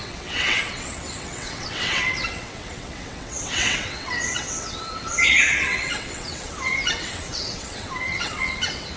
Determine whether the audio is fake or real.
fake